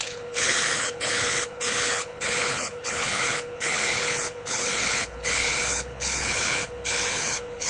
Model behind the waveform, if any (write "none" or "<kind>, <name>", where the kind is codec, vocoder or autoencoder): codec, HILCodec